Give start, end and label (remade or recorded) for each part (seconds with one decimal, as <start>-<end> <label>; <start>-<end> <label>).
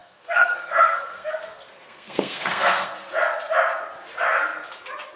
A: 0.0-3.1 remade; 3.1-5.2 recorded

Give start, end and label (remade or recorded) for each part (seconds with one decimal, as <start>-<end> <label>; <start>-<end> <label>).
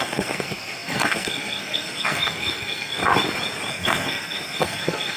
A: 0.0-3.0 remade; 3.0-3.7 recorded; 3.7-5.2 remade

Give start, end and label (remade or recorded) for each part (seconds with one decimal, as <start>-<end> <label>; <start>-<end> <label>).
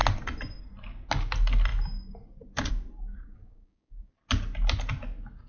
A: 0.0-3.1 recorded; 3.1-4.1 remade; 4.1-5.5 recorded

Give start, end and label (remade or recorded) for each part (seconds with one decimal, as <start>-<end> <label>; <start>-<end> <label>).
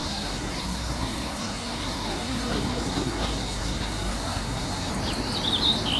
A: 0.0-4.9 remade; 4.9-6.0 recorded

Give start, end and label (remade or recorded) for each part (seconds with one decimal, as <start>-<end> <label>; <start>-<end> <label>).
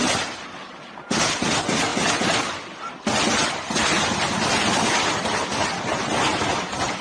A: 0.0-7.0 recorded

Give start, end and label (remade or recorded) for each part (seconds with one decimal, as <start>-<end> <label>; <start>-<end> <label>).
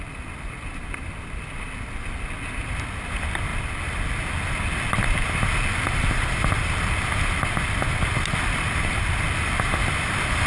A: 0.0-10.5 recorded